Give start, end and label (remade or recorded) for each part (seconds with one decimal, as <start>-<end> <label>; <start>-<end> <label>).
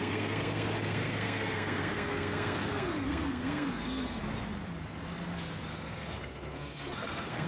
0.0-4.2 remade; 4.2-5.7 recorded; 5.7-7.5 remade